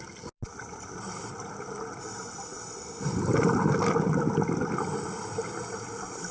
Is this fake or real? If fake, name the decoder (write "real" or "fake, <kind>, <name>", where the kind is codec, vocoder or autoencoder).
real